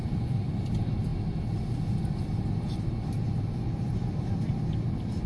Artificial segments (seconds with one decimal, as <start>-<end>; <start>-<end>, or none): none